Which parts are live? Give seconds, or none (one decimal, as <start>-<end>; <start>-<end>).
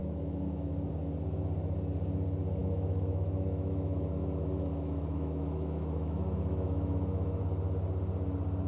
0.9-2.6; 7.4-8.7